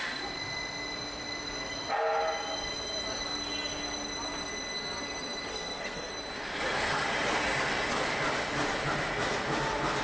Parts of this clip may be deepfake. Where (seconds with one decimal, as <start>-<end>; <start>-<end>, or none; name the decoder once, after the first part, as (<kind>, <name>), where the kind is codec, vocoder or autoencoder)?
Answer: 5.5-6.1 (codec, SNAC)